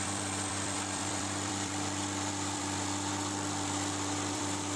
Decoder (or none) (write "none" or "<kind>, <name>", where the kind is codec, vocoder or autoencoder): vocoder, BigVGAN v2